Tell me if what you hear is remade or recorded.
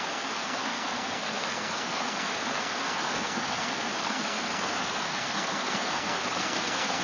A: remade